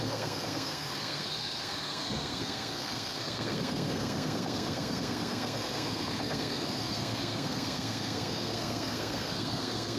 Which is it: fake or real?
fake